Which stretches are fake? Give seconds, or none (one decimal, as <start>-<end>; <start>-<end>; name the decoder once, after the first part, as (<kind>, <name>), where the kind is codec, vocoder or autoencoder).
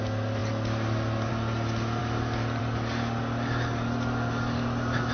none